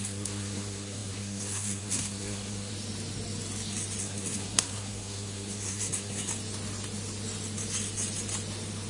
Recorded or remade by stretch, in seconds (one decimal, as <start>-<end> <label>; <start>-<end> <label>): 0.0-2.7 remade; 2.7-4.0 recorded; 4.0-6.3 remade; 6.3-8.9 recorded